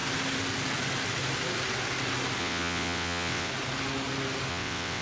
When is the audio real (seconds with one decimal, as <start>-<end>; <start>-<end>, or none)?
0.0-2.4; 3.5-4.5